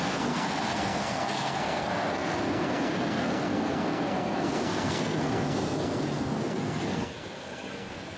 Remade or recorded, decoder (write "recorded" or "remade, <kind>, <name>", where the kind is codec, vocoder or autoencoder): remade, codec, SNAC